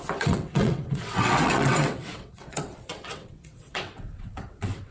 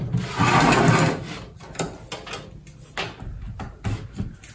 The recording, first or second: second